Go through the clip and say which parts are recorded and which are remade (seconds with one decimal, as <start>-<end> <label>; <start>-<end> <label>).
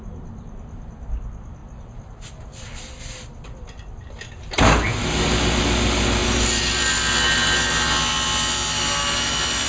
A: 0.0-9.7 recorded